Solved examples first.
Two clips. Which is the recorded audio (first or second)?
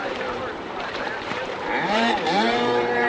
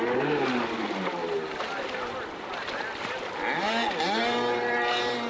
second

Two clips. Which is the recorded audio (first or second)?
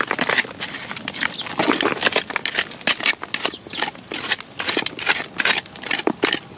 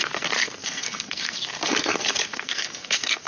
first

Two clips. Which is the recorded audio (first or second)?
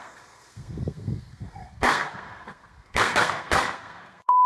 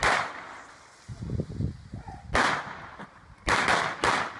second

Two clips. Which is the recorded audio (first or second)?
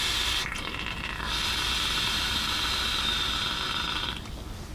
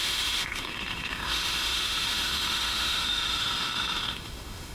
first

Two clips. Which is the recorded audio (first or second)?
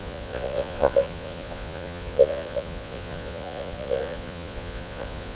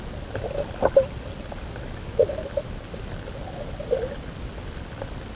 second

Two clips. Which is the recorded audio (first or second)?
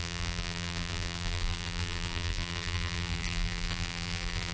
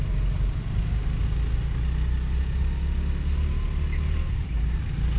second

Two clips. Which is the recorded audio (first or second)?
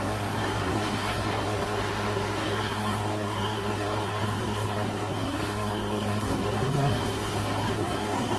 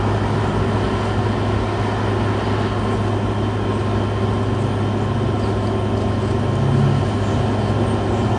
second